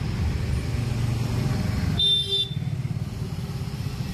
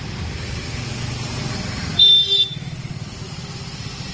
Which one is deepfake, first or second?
second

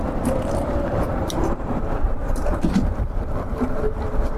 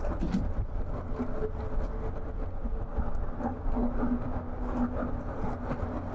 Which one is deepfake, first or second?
first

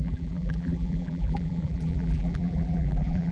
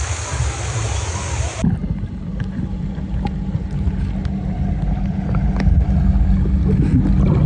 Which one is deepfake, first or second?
first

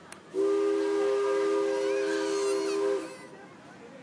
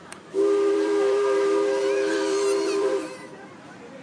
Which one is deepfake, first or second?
second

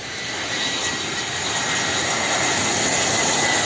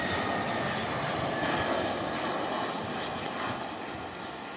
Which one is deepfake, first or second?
second